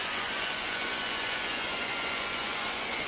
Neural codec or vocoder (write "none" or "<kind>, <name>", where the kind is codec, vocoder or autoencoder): vocoder, Vocos